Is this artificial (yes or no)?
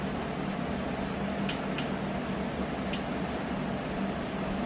no